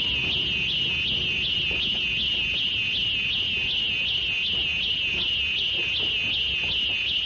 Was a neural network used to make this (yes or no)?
no